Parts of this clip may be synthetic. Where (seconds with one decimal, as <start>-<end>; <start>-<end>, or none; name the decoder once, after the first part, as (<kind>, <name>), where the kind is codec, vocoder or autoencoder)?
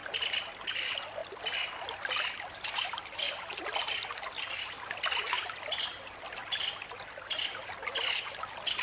none